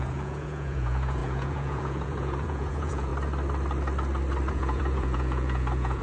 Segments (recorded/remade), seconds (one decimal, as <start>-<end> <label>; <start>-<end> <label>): 0.0-3.1 remade; 3.1-4.5 recorded; 4.5-6.0 remade